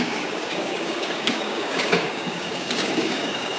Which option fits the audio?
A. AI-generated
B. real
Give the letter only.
A